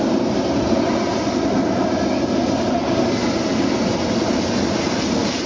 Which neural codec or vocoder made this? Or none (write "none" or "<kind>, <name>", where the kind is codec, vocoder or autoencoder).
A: none